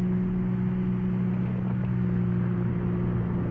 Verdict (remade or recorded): recorded